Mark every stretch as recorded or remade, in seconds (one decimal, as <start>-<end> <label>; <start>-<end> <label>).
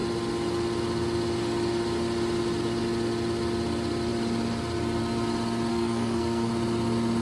0.0-5.7 recorded; 5.7-6.5 remade; 6.5-7.2 recorded